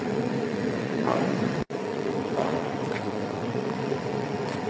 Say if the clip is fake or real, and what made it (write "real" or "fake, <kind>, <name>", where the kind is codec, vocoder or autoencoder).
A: fake, vocoder, WaveNeXt